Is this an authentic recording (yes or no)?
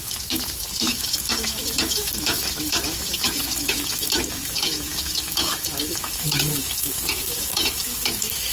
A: no